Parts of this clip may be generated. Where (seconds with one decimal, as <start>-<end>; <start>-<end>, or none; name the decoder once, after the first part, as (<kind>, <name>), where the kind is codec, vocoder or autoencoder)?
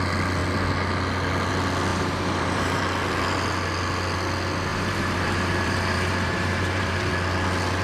1.9-2.8 (vocoder, BigVGAN v2); 4.7-7.1